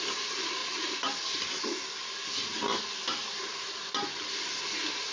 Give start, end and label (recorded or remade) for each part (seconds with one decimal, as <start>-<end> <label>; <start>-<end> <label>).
0.0-0.6 recorded; 0.6-1.5 remade; 1.5-2.6 recorded; 2.6-3.7 remade; 3.7-5.1 recorded